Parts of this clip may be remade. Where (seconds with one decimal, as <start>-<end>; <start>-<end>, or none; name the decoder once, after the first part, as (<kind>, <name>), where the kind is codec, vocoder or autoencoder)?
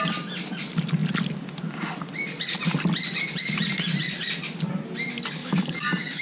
5.4-6.2 (codec, DAC)